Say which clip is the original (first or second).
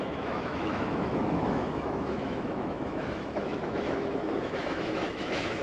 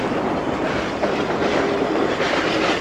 second